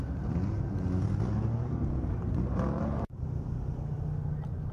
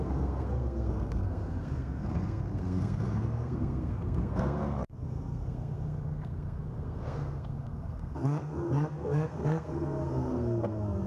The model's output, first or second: second